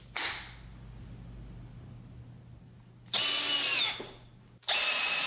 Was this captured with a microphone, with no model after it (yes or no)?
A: yes